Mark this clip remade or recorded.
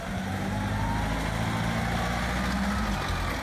recorded